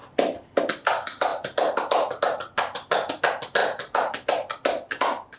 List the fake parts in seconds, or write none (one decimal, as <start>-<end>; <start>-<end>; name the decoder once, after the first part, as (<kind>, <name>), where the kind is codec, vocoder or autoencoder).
none